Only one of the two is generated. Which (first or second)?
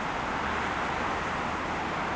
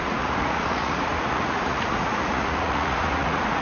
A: second